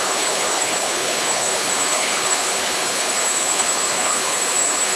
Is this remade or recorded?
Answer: remade